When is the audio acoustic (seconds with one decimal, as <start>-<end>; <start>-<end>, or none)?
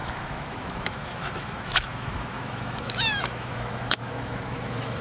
none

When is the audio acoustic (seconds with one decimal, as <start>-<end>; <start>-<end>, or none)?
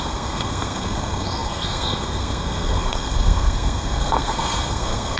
none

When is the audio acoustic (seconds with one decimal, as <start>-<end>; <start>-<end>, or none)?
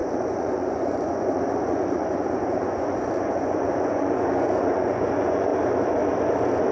5.5-6.7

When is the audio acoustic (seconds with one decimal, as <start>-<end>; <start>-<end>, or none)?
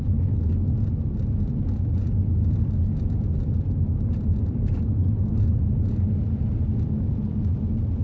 0.0-8.0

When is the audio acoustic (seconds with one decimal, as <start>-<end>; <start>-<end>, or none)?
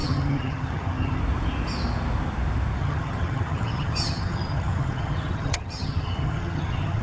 1.2-2.8